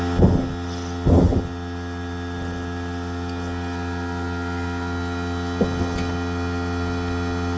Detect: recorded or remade recorded